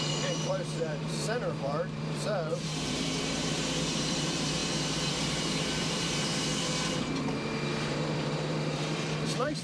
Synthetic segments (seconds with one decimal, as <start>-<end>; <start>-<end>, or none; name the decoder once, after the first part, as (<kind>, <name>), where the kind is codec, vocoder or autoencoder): 0.0-4.6 (vocoder, BigVGAN v2); 5.1-6.5; 7.3-9.6